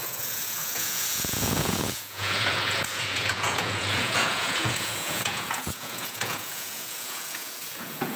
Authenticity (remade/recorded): remade